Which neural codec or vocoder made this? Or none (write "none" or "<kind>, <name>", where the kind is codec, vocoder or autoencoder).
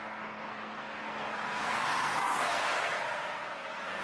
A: codec, SNAC